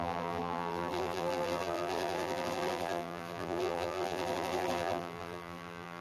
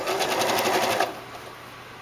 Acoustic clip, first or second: second